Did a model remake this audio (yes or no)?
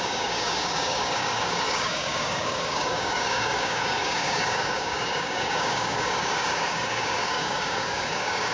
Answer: yes